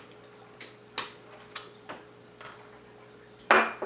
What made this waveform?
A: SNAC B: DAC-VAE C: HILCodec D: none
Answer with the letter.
D